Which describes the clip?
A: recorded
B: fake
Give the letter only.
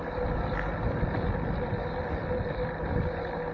A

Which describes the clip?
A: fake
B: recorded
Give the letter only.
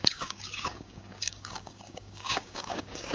A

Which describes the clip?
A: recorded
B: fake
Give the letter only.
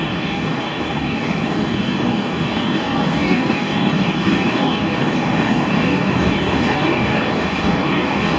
B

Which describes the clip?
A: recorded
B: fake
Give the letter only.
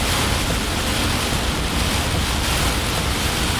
A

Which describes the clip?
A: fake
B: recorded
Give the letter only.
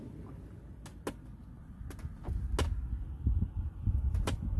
B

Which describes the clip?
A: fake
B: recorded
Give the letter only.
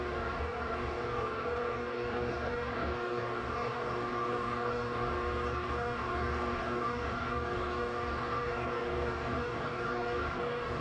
A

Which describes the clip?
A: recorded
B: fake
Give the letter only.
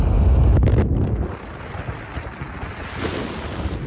A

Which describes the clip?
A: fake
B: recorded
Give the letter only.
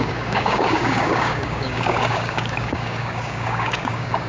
A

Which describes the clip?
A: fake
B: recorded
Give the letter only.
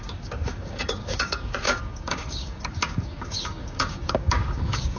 A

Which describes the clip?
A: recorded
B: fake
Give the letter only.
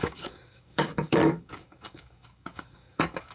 B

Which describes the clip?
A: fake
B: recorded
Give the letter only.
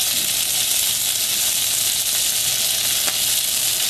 B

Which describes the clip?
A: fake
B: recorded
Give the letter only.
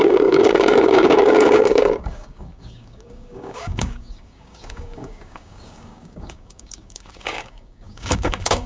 A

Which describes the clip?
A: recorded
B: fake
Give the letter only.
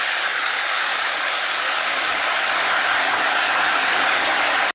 B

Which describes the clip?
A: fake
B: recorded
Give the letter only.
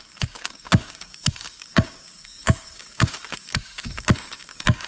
A